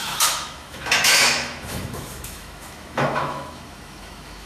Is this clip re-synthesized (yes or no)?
yes